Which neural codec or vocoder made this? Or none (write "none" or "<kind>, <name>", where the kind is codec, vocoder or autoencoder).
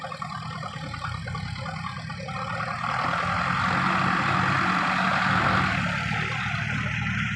none